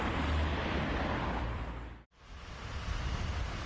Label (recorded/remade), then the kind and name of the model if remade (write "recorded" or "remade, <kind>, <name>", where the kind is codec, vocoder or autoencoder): remade, vocoder, BigVGAN v2